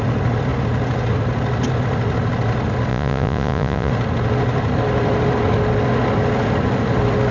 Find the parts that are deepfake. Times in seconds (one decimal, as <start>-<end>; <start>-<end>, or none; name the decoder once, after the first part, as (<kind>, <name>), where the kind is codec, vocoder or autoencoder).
2.9-3.9 (vocoder, Vocos)